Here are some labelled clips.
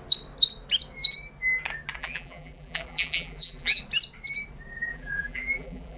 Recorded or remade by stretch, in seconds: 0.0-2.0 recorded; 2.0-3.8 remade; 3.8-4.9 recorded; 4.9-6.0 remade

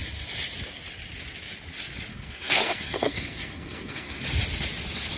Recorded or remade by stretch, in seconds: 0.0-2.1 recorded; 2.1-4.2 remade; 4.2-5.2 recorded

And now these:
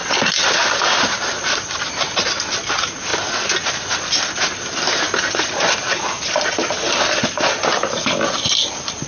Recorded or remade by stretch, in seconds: 0.0-9.1 recorded